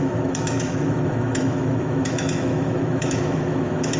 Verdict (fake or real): fake